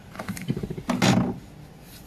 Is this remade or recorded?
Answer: recorded